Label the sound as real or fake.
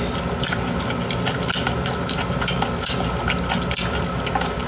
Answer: real